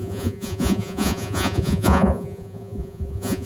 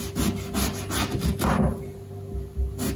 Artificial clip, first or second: first